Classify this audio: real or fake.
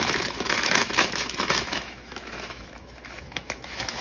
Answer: fake